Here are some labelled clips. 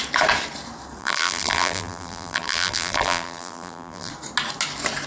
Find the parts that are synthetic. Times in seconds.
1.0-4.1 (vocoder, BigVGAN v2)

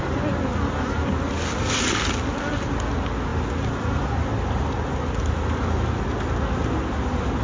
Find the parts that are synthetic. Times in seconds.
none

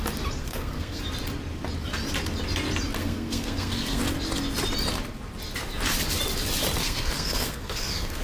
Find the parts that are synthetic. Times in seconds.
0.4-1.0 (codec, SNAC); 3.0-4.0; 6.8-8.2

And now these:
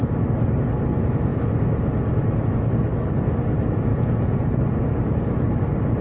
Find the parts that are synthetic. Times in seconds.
3.9-4.6 (vocoder, Vocos)